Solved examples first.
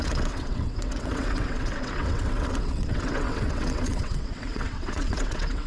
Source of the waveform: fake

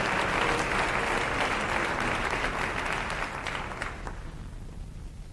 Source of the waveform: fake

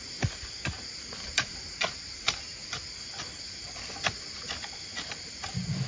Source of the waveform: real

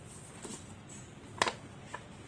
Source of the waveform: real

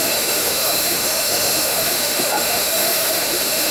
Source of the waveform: fake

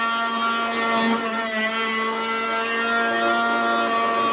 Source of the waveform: real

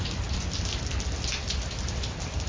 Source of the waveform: fake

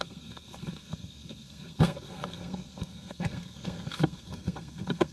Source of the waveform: fake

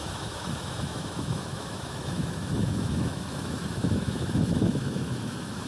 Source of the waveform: fake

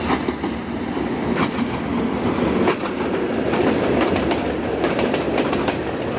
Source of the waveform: real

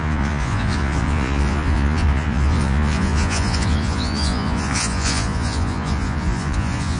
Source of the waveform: fake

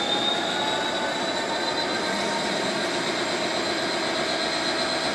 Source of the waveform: real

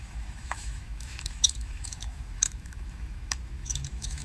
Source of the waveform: fake